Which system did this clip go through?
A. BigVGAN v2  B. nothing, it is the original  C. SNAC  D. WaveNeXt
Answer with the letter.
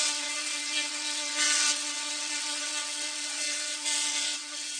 D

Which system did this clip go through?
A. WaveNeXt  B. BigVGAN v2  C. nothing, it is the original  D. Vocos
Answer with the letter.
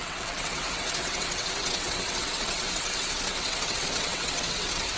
A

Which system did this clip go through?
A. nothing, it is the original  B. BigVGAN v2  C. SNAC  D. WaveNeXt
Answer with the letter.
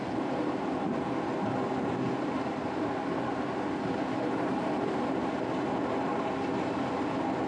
A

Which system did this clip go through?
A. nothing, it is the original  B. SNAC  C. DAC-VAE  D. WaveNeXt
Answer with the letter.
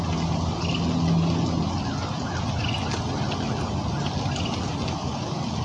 A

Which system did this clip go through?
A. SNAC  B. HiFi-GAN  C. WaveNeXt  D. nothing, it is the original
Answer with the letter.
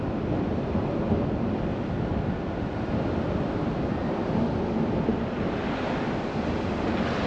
D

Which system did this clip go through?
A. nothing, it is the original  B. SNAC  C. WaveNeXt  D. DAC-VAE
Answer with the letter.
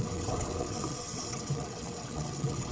C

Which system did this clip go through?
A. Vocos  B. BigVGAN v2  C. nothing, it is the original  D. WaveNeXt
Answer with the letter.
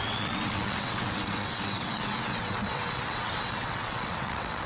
D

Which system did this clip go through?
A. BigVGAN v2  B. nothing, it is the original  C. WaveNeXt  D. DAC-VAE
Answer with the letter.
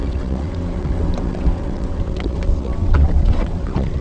C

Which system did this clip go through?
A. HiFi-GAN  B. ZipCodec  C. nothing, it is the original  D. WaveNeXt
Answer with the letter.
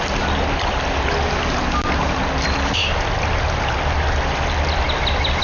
C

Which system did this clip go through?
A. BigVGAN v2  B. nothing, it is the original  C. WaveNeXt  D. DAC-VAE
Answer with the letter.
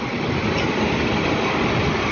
B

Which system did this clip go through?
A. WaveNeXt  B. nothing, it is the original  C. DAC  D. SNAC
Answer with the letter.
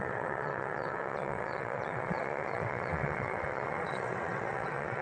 A